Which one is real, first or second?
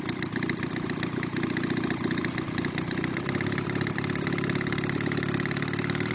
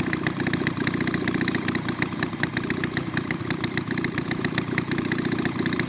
first